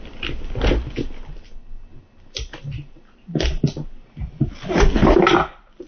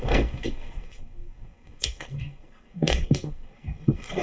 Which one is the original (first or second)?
first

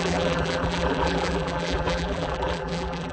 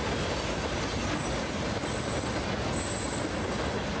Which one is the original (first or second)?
second